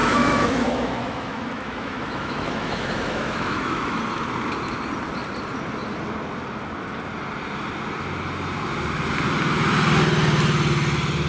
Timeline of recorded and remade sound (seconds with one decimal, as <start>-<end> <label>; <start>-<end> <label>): 0.0-4.0 remade; 4.0-11.3 recorded